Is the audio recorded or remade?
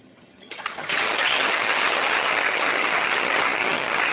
remade